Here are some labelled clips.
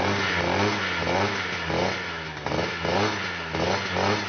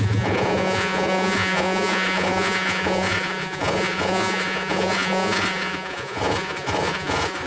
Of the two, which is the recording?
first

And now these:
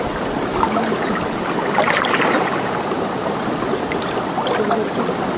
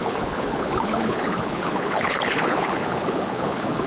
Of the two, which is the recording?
first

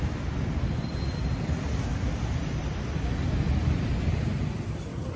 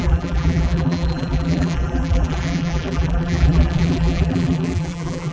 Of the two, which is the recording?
first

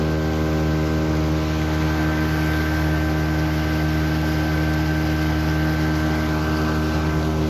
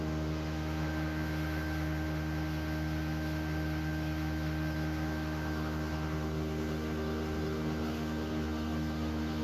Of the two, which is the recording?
first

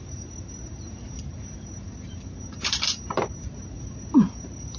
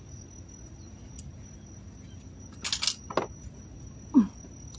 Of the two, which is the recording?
second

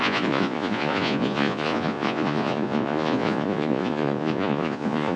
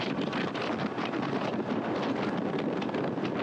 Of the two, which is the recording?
second